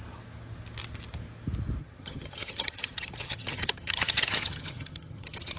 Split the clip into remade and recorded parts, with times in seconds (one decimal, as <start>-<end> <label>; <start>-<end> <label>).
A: 0.0-1.8 recorded; 1.8-5.6 remade